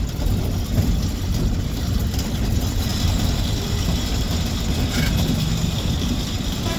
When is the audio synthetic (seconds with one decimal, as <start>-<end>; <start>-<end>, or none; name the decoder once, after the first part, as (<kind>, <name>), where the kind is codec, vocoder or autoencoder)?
none